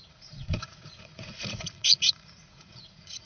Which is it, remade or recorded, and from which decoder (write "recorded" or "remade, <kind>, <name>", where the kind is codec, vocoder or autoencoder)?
remade, vocoder, Vocos